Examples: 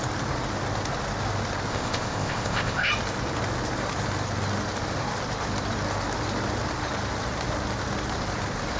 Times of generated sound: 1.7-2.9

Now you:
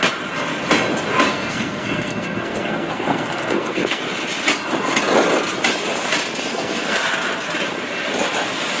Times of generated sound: 1.3-4.0; 6.5-7.0